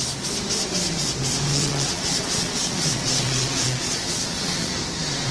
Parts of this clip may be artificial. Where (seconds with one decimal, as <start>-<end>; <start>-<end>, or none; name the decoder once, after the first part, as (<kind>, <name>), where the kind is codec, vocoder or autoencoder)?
1.5-4.7 (vocoder, Vocos)